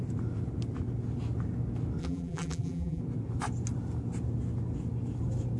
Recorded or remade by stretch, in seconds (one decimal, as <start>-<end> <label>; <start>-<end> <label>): 0.0-2.0 recorded; 2.0-3.0 remade; 3.0-5.6 recorded